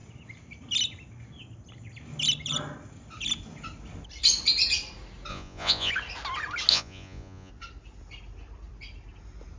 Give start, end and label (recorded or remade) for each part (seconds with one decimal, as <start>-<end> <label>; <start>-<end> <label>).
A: 0.0-5.3 recorded; 5.3-5.9 remade; 5.9-6.7 recorded; 6.7-7.5 remade; 7.5-9.6 recorded